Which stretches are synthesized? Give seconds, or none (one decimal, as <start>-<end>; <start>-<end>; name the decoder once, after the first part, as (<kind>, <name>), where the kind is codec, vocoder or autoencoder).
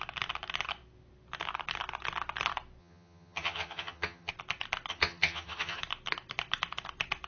2.8-4.3 (vocoder, HiFi-GAN); 4.9-5.8